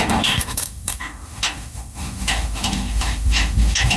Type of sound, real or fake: fake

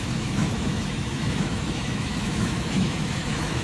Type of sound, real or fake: fake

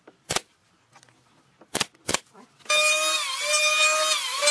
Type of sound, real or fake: real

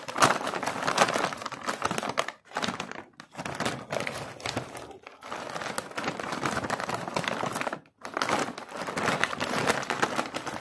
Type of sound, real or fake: real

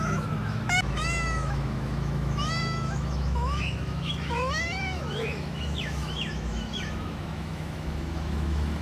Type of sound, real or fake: fake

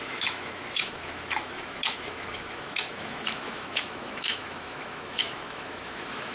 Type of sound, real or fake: fake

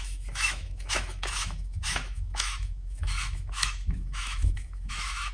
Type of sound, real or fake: fake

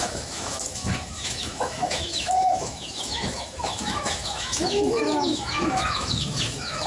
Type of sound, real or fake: fake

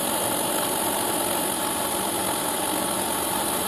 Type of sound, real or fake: real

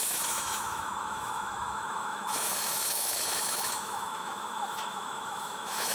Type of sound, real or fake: fake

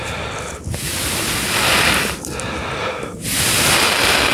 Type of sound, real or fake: real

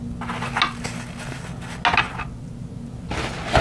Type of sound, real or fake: real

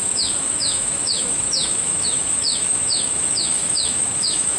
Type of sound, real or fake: fake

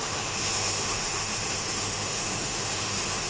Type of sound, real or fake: fake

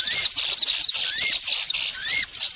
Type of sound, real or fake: real